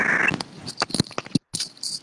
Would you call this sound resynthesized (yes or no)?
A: no